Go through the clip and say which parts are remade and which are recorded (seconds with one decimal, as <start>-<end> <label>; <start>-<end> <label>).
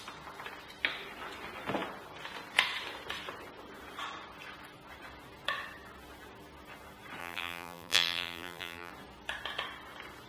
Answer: 0.0-7.2 recorded; 7.2-8.9 remade; 8.9-10.3 recorded